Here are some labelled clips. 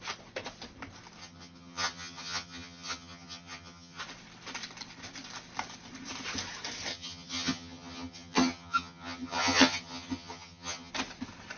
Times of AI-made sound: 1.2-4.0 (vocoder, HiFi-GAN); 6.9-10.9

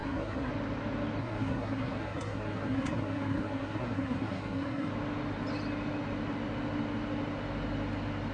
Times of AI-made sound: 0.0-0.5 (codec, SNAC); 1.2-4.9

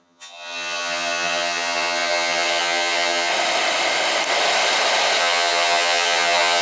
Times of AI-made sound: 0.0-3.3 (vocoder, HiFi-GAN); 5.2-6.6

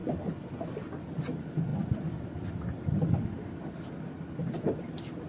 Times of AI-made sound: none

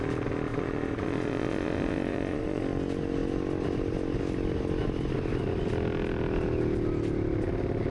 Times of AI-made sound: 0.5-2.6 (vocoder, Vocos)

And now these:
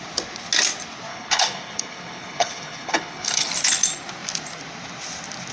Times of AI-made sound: 1.1-3.5 (codec, HILCodec)

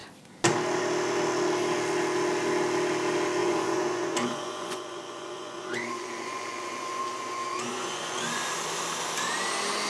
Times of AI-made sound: 3.4-8.5 (vocoder, Vocos)

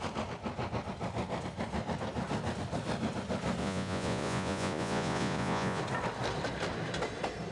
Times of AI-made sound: 3.6-5.8 (vocoder, Vocos)